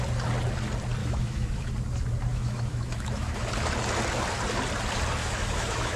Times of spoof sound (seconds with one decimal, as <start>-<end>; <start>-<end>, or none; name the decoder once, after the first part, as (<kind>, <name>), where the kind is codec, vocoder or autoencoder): 1.0-1.7 (autoencoder, DAC-VAE); 2.3-3.5; 5.2-6.0